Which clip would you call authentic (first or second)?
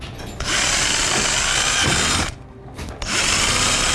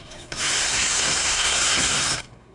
first